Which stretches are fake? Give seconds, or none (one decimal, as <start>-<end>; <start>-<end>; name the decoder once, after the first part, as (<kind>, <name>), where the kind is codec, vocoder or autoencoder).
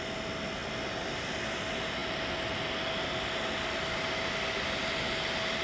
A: none